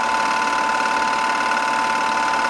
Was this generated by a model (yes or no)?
no